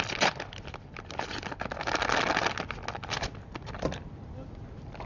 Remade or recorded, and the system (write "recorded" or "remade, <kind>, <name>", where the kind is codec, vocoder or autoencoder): recorded